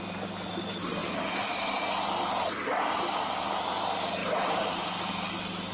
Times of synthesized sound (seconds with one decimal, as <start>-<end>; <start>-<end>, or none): 4.2-4.9